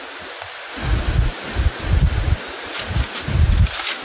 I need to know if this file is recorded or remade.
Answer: recorded